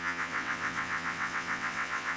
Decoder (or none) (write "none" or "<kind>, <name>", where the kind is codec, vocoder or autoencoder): vocoder, WaveNeXt